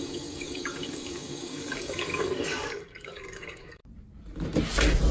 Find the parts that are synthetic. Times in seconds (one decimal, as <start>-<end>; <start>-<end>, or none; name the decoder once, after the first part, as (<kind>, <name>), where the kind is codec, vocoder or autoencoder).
0.0-3.8 (codec, DAC)